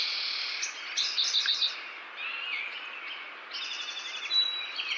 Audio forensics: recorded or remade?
recorded